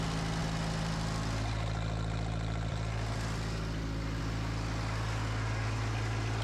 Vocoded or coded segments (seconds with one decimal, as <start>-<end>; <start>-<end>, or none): none